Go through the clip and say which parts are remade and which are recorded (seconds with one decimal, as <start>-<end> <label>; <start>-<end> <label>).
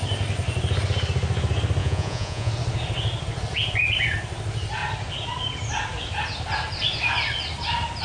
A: 0.0-1.8 recorded; 1.8-2.5 remade; 2.5-8.0 recorded